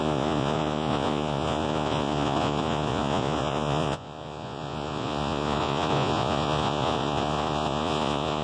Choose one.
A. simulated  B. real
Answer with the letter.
A